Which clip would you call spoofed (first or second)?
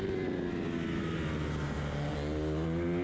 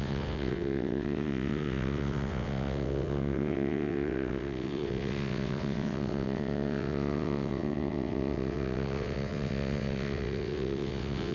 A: second